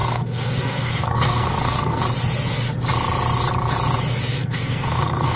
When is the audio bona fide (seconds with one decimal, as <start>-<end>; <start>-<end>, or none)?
2.0-4.3